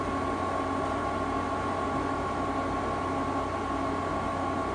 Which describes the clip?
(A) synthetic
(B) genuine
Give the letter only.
B